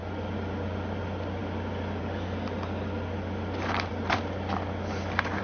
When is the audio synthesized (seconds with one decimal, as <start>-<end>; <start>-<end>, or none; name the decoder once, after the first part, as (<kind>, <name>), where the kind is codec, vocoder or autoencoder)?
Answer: none